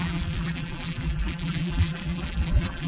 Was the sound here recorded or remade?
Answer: remade